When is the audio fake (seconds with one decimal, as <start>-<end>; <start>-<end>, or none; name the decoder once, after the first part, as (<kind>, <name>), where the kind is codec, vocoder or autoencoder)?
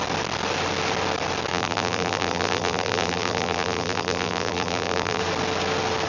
1.5-5.2 (vocoder, BigVGAN v2)